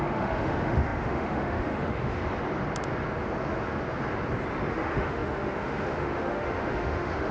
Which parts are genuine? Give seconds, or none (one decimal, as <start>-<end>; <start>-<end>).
2.2-4.7